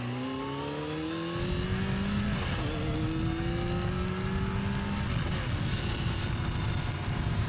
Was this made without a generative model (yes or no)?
yes